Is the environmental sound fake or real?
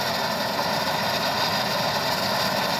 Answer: real